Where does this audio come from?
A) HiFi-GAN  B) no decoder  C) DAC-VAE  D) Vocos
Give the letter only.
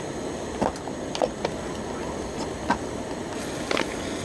B